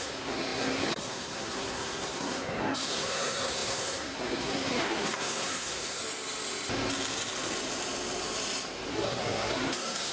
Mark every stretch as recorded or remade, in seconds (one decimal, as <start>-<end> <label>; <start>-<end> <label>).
0.0-6.0 remade; 6.0-8.9 recorded; 8.9-10.1 remade